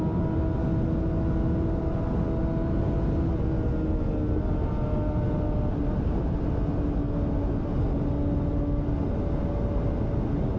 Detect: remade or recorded recorded